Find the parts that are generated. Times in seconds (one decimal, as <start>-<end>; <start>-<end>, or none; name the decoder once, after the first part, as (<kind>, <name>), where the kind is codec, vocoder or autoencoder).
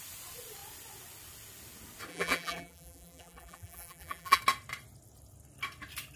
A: 2.1-4.4 (vocoder, BigVGAN v2)